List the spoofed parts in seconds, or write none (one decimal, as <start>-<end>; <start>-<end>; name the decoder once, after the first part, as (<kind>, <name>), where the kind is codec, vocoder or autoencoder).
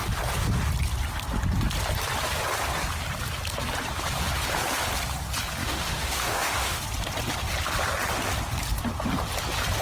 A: 5.6-6.8 (autoencoder, DAC-VAE)